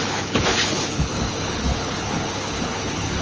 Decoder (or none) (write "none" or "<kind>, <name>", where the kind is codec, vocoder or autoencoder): codec, HILCodec